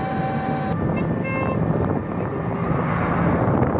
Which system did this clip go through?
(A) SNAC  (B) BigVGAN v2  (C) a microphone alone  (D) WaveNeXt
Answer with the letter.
C